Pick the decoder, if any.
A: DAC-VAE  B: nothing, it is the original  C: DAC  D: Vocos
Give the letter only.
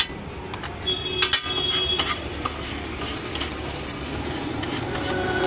B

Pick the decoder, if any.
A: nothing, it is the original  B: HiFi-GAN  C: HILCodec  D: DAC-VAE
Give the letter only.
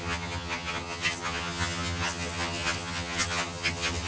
B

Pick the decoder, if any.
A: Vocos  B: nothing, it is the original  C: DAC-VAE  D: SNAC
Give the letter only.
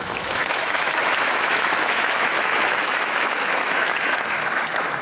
C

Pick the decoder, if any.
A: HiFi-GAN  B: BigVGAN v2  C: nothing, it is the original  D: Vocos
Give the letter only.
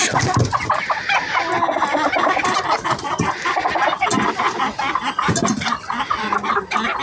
C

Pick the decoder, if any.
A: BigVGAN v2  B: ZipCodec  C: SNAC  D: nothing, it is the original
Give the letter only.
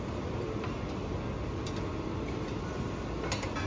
D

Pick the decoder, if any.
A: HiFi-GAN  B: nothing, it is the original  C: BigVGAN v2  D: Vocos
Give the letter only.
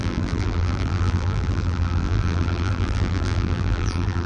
C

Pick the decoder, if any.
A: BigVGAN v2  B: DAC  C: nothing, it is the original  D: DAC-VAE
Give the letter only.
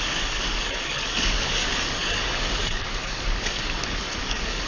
B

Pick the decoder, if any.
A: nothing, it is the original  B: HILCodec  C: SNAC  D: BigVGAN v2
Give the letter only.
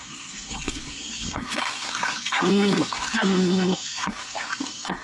C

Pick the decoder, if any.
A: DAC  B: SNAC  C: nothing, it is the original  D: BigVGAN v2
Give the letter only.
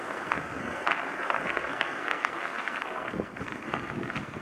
B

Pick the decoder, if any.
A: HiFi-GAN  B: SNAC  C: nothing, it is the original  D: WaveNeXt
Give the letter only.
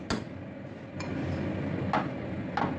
C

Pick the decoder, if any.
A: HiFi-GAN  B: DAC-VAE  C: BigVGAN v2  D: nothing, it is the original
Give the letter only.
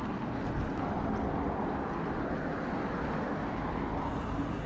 D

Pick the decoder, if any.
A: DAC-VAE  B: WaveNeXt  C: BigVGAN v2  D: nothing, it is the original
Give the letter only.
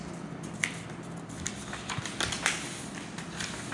D